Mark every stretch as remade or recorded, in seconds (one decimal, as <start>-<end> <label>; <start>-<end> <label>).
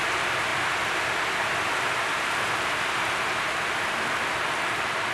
0.0-5.1 recorded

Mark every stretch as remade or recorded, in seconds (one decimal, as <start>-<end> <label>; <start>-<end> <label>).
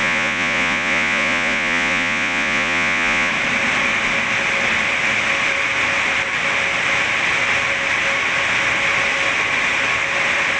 0.0-3.3 remade; 3.3-10.6 recorded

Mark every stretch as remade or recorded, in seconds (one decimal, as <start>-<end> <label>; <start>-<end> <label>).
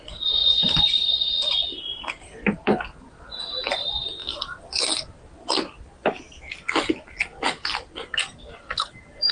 0.0-4.2 recorded; 4.2-4.8 remade; 4.8-9.3 recorded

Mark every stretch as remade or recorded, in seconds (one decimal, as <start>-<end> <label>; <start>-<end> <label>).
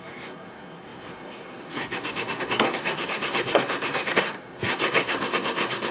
0.0-5.9 remade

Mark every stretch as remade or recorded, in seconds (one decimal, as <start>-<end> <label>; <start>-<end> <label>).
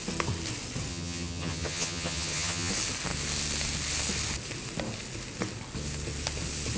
0.0-0.9 recorded; 0.9-2.7 remade; 2.7-6.8 recorded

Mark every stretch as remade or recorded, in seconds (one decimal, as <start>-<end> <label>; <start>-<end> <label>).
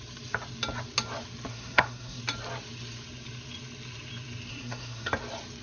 0.0-1.5 recorded; 1.5-2.2 remade; 2.2-4.5 recorded; 4.5-5.1 remade; 5.1-5.6 recorded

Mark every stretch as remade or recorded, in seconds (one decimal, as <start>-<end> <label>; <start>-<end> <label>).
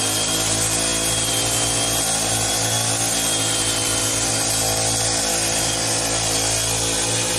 0.0-7.4 recorded